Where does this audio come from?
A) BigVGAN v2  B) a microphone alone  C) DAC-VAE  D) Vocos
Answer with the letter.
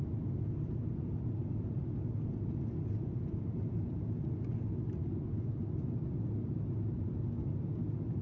B